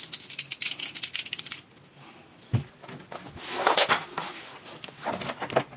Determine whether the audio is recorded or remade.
recorded